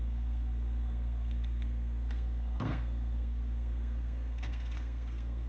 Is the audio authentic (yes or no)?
no